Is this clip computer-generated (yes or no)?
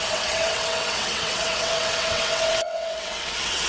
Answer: yes